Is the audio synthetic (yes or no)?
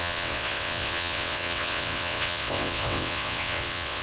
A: yes